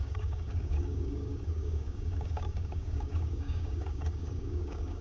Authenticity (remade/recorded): remade